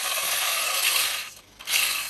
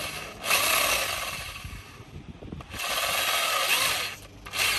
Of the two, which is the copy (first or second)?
first